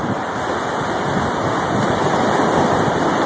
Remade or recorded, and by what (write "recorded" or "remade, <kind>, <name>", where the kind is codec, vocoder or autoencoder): recorded